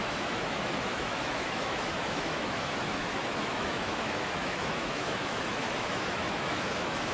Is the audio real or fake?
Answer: fake